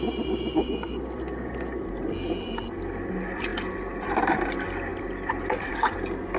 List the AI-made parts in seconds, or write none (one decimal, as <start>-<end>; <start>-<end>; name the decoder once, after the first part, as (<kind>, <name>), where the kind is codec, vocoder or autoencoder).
none